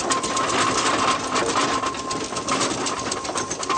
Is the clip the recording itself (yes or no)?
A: yes